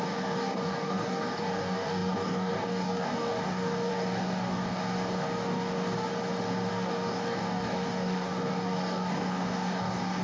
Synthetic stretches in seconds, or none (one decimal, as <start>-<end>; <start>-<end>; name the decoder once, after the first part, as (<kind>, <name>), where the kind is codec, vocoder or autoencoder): 0.0-6.1 (codec, DAC); 6.7-10.2